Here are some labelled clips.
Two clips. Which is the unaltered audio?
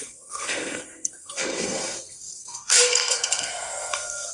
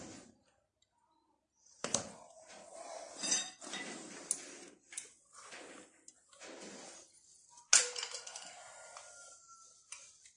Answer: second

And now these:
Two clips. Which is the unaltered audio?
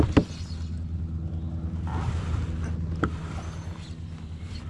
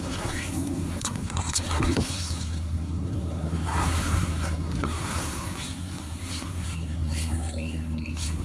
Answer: first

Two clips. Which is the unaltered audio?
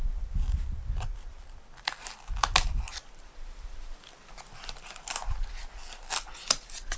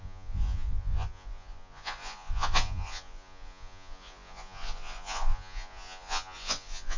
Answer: first